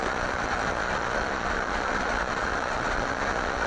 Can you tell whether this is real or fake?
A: fake